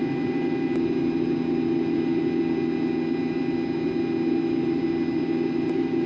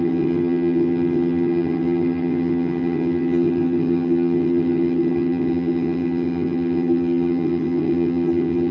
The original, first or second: first